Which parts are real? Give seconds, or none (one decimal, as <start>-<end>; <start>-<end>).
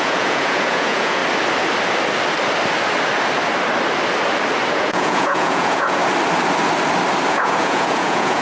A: 1.2-4.7; 6.0-7.3